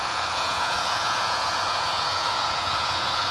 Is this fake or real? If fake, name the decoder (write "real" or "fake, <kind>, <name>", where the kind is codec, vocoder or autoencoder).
fake, vocoder, Vocos